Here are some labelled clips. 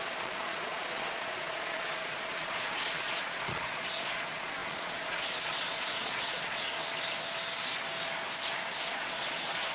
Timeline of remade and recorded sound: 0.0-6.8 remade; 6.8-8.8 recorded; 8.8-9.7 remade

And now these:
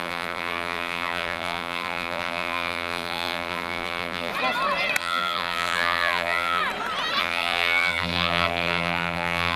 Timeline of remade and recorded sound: 0.0-4.3 remade; 4.3-5.0 recorded; 5.0-6.6 remade; 6.6-7.2 recorded; 7.2-9.6 remade

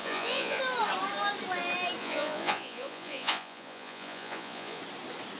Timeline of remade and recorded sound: 0.0-0.6 remade; 0.6-2.0 recorded; 2.0-4.8 remade; 4.8-5.4 recorded

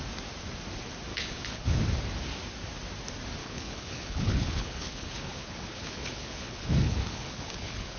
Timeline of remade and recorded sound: 0.0-1.1 recorded; 1.1-1.8 remade; 1.8-3.4 recorded; 3.4-8.0 remade

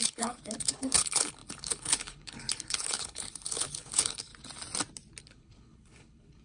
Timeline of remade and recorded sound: 0.0-4.3 remade; 4.3-5.2 recorded; 5.2-6.4 remade

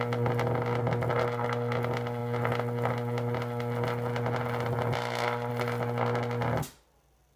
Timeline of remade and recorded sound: 0.0-7.4 recorded

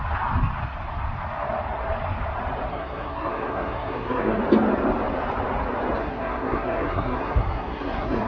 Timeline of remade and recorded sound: 0.0-2.7 recorded; 2.7-4.4 remade; 4.4-6.0 recorded; 6.0-8.3 remade

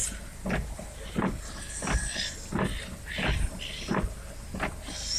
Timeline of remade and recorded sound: 0.0-5.2 recorded